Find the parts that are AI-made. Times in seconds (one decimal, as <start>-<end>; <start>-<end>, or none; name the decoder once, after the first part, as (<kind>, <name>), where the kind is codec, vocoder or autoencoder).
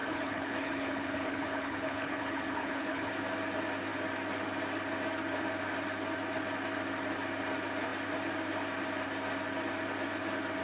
0.0-3.1 (codec, HILCodec)